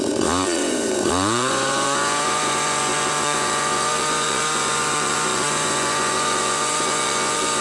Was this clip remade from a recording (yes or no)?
yes